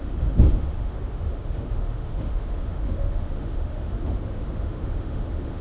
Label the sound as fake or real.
fake